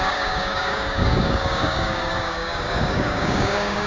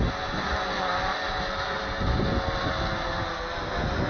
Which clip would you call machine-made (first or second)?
first